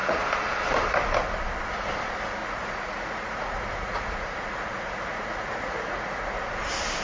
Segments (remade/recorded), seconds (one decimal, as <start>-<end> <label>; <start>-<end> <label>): 0.0-2.4 recorded; 2.4-6.6 remade; 6.6-7.0 recorded